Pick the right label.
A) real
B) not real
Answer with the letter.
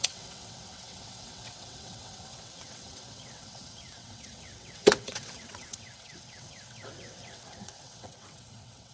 B